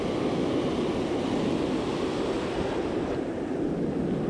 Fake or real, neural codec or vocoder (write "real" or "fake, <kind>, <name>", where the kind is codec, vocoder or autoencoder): real